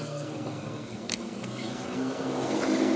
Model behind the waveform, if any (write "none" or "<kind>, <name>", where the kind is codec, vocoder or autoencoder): codec, SNAC